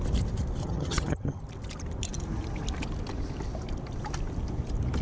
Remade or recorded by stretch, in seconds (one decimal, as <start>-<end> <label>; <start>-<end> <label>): 0.0-0.6 recorded; 0.6-1.4 remade; 1.4-5.0 recorded